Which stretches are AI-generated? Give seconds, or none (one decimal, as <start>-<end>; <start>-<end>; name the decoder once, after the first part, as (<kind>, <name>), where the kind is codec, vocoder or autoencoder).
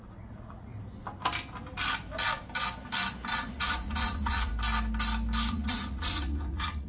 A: 0.0-0.7 (vocoder, Vocos); 3.3-4.5; 5.5-6.9